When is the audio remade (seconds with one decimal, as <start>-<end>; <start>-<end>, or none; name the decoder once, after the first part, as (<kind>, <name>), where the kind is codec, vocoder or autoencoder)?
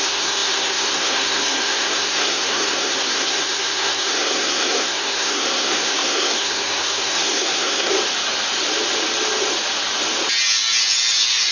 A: 0.0-7.9 (codec, SNAC)